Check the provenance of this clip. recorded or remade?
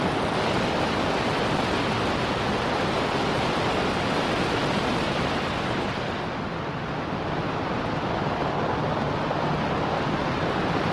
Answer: recorded